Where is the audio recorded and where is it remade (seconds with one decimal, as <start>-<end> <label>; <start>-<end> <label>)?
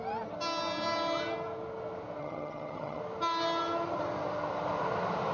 0.0-2.2 recorded; 2.2-3.0 remade; 3.0-5.3 recorded